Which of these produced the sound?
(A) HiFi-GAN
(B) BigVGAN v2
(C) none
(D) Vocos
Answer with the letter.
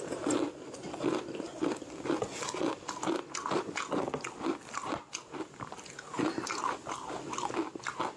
C